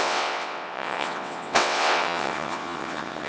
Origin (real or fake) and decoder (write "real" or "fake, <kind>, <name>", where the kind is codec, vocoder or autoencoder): fake, vocoder, WaveNeXt